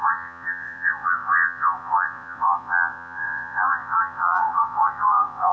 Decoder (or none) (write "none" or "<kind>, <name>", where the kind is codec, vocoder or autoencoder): vocoder, Vocos